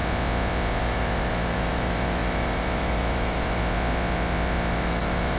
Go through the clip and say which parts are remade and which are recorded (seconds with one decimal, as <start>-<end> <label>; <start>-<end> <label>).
0.0-0.8 recorded; 0.8-3.6 remade; 3.6-4.7 recorded; 4.7-5.4 remade